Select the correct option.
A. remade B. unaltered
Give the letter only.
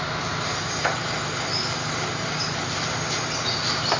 B